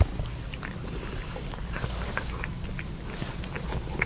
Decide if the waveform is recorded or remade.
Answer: recorded